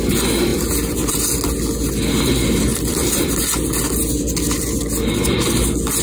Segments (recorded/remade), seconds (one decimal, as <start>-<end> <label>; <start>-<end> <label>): 0.0-0.5 recorded; 0.5-1.1 remade; 1.1-2.7 recorded; 2.7-3.3 remade; 3.3-6.0 recorded